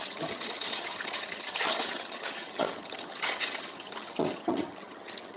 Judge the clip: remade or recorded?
remade